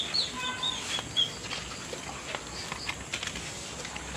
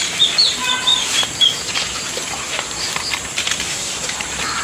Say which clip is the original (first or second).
first